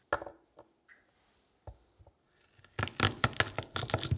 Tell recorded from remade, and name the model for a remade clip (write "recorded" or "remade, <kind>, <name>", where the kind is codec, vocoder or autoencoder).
recorded